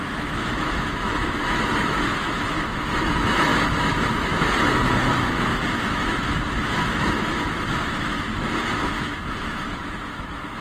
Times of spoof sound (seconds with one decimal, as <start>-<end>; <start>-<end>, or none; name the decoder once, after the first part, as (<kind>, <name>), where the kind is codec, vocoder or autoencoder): 0.0-10.6 (autoencoder, DAC-VAE)